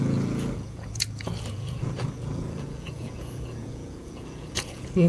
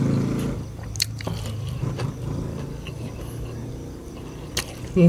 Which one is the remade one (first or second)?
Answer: first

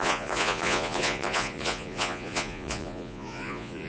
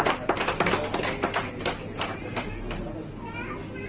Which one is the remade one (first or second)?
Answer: first